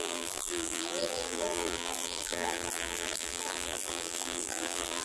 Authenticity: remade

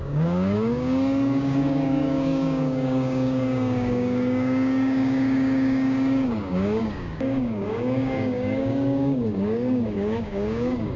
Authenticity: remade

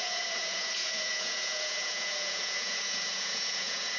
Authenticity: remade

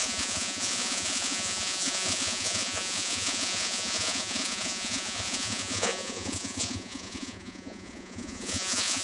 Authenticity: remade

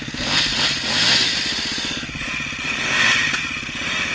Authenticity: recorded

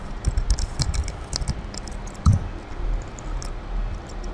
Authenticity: recorded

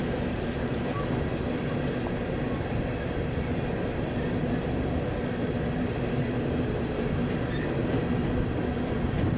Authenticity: recorded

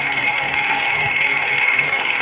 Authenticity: remade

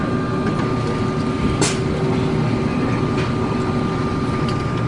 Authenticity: recorded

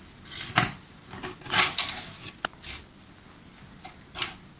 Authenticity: recorded